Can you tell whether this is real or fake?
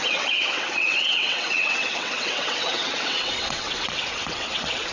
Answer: fake